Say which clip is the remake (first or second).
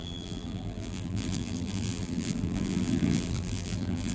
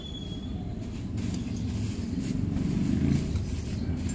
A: first